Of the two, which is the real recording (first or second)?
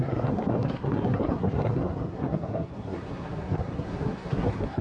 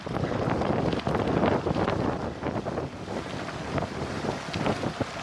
second